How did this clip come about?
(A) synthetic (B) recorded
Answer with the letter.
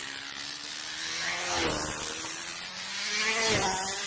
B